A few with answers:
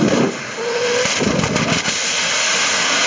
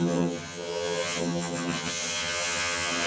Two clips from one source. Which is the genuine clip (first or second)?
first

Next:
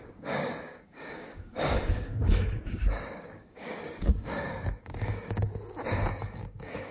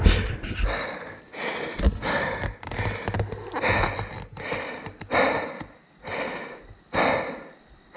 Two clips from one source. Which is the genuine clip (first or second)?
second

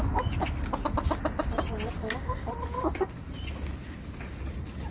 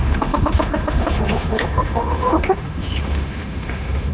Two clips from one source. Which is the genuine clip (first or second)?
first